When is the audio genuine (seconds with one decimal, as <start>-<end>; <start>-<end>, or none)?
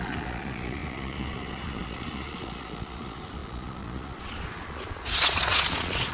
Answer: none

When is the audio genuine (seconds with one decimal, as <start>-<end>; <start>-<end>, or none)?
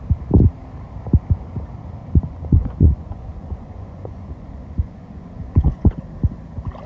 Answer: 0.0-2.0; 6.1-6.9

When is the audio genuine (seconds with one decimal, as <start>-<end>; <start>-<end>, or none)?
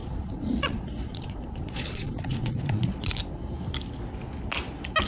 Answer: 3.1-5.1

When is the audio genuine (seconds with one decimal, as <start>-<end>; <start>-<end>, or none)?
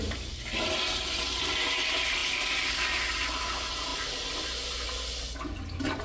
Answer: 0.0-6.0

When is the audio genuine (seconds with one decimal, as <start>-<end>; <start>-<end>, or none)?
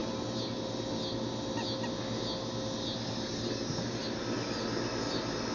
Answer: 0.0-5.5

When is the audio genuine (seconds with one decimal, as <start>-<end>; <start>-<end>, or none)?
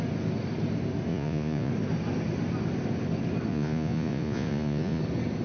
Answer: 0.0-1.1; 1.7-3.5; 5.0-5.4